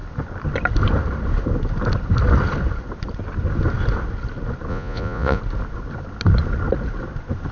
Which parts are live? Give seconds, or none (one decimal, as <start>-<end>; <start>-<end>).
0.0-4.7; 5.4-7.5